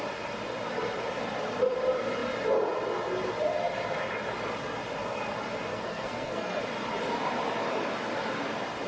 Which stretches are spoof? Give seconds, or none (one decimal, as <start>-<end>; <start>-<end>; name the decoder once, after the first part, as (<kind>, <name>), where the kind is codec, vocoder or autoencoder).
5.7-6.6 (codec, SNAC)